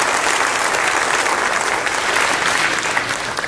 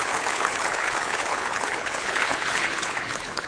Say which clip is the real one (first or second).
first